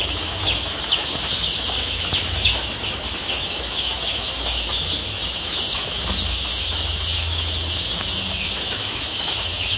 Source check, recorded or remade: remade